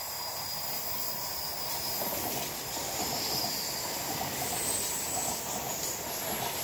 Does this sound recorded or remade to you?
recorded